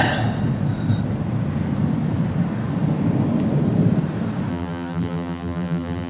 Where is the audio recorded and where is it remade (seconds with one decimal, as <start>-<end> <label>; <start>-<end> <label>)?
0.0-4.5 recorded; 4.5-6.1 remade